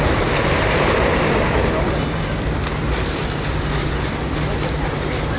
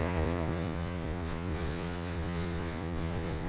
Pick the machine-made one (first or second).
second